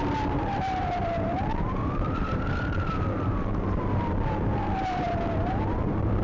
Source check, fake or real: fake